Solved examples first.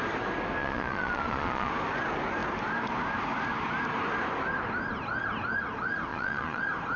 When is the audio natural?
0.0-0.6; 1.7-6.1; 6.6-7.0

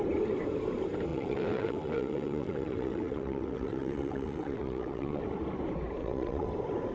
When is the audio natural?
0.0-1.1; 5.2-6.0; 6.5-6.9

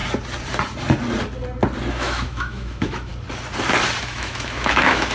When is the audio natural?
0.0-1.9; 3.1-4.0

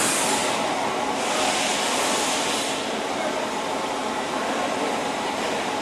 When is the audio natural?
0.0-5.8